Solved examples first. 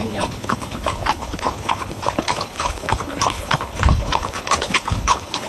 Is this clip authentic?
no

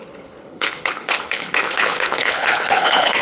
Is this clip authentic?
no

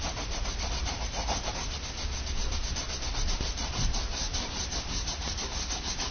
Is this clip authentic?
yes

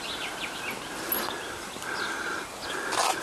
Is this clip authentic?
yes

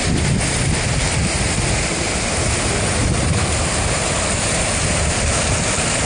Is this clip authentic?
yes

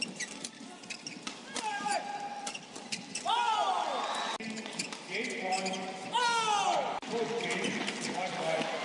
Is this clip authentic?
yes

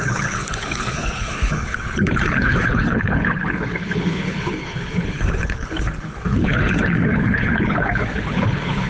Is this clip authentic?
no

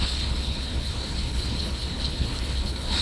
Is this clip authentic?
no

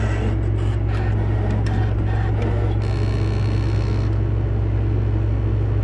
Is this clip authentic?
yes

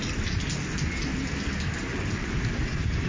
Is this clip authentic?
yes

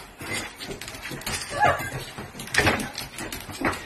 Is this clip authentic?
yes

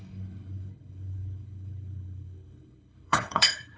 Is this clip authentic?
no